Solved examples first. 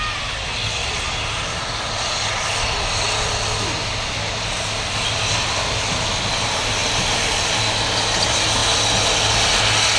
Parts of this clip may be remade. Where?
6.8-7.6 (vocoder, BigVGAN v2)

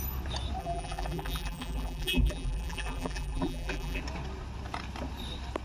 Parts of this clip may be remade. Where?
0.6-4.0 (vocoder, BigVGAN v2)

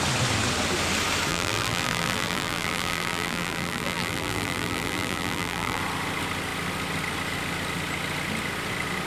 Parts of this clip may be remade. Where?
1.3-5.8 (vocoder, BigVGAN v2)

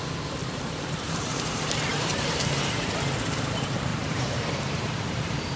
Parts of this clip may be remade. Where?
0.4-1.4 (vocoder, BigVGAN v2); 1.9-2.9; 3.9-4.9